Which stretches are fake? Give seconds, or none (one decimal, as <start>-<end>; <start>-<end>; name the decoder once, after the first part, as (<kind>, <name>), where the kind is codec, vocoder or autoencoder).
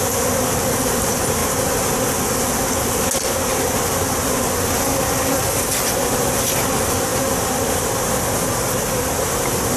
none